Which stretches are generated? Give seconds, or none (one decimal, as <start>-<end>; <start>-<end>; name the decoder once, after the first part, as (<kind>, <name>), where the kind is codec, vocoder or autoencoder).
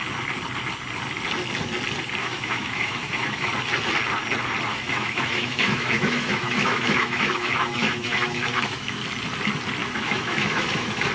2.2-3.5 (autoencoder, DAC-VAE); 4.7-9.0; 9.8-11.1